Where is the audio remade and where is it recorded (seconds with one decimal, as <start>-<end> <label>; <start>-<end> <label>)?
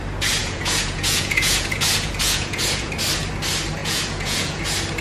0.0-0.4 recorded; 0.4-2.9 remade; 2.9-3.8 recorded; 3.8-4.6 remade; 4.6-5.0 recorded